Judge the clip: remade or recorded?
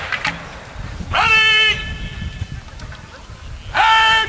recorded